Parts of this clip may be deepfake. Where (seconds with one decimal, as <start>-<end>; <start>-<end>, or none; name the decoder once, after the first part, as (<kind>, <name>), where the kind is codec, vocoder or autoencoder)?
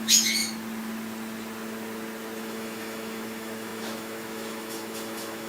0.0-0.4 (autoencoder, DAC-VAE); 2.4-5.5